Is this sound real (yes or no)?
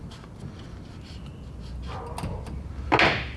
yes